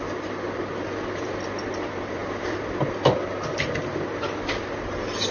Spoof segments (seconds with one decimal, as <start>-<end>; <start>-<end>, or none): none